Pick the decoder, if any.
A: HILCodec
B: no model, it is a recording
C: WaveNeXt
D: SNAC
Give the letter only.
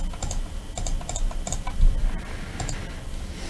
B